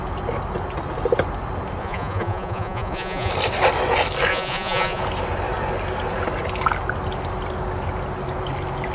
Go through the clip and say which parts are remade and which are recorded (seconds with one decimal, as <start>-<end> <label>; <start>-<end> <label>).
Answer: 0.0-1.8 recorded; 1.8-3.3 remade; 3.3-4.3 recorded; 4.3-5.0 remade; 5.0-8.9 recorded